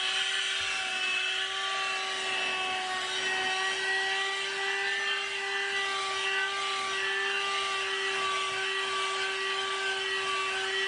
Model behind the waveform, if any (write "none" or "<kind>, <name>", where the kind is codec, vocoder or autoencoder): none